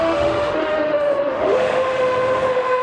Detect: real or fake fake